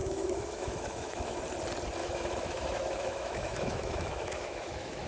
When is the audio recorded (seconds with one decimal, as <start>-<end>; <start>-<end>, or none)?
1.4-2.0